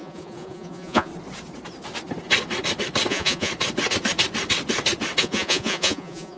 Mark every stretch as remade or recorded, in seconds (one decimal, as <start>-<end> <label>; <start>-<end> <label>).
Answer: 0.0-1.1 remade; 1.1-3.1 recorded; 3.1-3.5 remade; 3.5-5.2 recorded; 5.2-6.4 remade